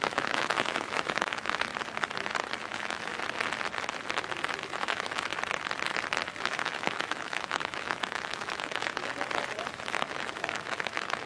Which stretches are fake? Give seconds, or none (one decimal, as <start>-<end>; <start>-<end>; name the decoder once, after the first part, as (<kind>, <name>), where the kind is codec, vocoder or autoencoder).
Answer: 0.0-1.7 (autoencoder, DAC-VAE); 2.7-3.1; 4.8-5.3; 6.4-9.1; 10.1-11.3